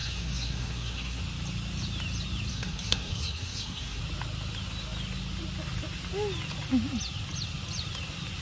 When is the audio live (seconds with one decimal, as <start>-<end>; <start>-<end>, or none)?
1.2-2.5; 4.0-8.4